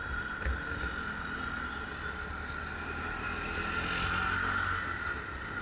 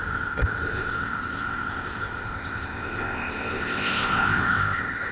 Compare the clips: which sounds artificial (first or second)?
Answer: second